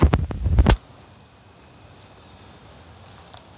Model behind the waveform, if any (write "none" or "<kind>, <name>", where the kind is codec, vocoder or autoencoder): none